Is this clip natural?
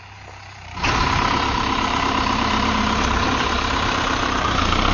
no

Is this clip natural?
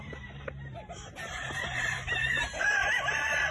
no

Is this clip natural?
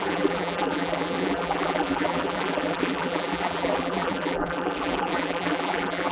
no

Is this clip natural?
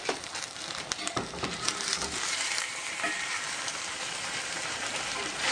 no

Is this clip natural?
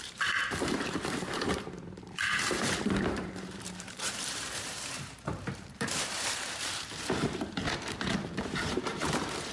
no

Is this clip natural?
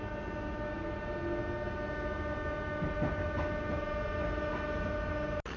yes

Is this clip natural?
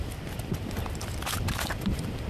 yes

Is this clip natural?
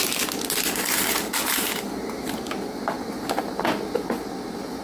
yes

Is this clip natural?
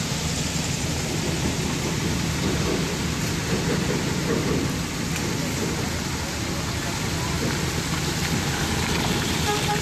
yes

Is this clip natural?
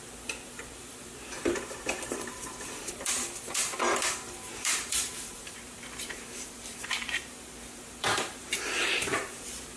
no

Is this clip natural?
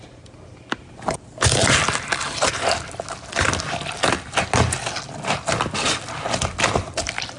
yes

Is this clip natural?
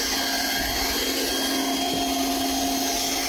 yes